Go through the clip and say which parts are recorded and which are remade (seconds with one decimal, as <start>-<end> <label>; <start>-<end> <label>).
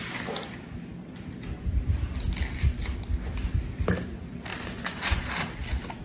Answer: 0.0-4.5 recorded; 4.5-5.3 remade; 5.3-6.0 recorded